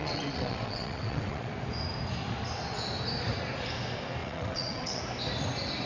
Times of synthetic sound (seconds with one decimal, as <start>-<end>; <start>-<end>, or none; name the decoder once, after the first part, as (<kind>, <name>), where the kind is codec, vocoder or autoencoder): 0.0-1.5 (vocoder, WaveNeXt); 4.2-5.0